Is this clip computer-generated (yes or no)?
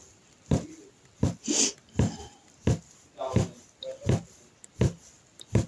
no